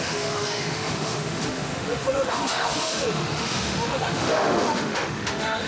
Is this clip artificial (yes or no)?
yes